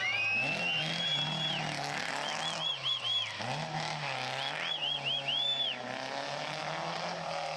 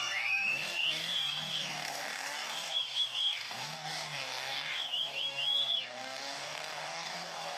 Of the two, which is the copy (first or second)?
second